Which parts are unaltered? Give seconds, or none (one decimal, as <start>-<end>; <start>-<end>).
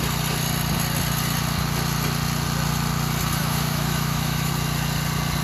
0.0-3.4; 4.5-5.4